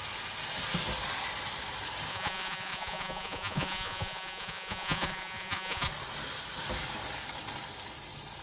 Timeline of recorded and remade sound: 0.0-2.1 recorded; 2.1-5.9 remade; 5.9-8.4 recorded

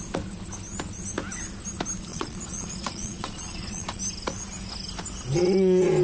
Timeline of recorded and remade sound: 0.0-2.1 recorded; 2.1-4.0 remade; 4.0-6.0 recorded

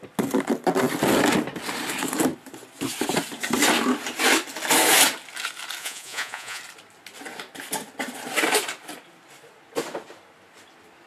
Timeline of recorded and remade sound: 0.0-5.8 recorded; 5.8-6.6 remade; 6.6-11.1 recorded

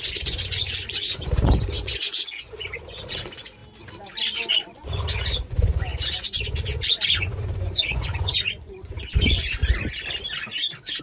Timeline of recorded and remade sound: 0.0-3.6 remade; 3.6-4.5 recorded; 4.5-9.6 remade; 9.6-11.0 recorded

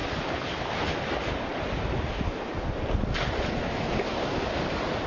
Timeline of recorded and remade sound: 0.0-5.1 recorded

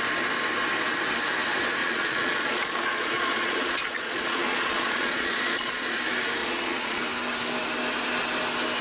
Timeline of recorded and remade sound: 0.0-1.8 recorded; 1.8-6.0 remade; 6.0-6.4 recorded; 6.4-7.0 remade; 7.0-8.8 recorded

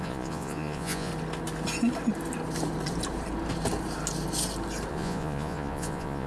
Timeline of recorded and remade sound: 0.0-1.1 remade; 1.1-4.9 recorded; 4.9-6.3 remade